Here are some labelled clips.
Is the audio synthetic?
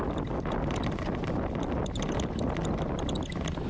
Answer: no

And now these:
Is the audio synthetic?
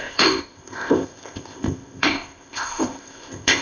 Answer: yes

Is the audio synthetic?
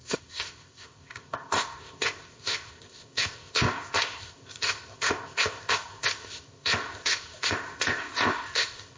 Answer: yes